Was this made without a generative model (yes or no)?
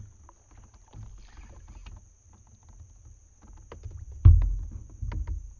yes